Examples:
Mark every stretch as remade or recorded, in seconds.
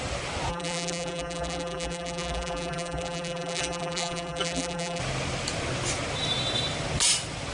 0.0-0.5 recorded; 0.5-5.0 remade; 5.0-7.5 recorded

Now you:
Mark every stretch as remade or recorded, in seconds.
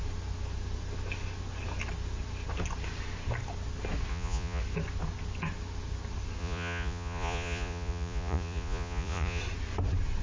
0.0-4.1 recorded; 4.1-4.6 remade; 4.6-6.4 recorded; 6.4-9.4 remade; 9.4-10.2 recorded